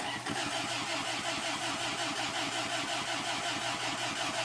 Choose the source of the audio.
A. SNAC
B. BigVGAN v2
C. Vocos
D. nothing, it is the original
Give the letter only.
D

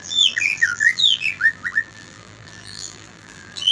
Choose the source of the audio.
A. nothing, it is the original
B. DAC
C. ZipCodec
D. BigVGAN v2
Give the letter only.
D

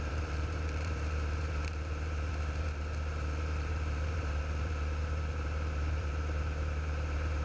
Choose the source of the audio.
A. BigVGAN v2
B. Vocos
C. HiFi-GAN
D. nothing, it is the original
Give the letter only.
A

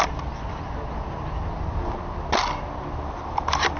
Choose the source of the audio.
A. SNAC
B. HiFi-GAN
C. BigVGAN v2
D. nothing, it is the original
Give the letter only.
D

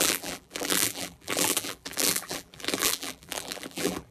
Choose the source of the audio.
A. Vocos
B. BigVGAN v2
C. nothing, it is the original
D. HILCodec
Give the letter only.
B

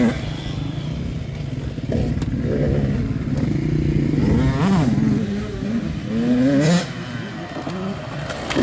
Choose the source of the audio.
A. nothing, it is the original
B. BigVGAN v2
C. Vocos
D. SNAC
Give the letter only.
A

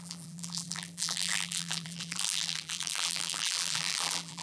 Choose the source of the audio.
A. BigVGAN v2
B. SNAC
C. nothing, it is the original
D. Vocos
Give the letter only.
A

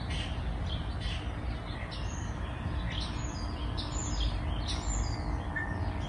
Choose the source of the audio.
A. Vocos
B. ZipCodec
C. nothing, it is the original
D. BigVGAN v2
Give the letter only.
C